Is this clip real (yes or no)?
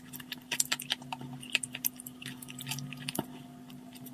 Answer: no